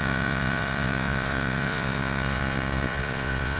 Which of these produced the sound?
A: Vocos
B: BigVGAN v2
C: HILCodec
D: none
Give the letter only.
A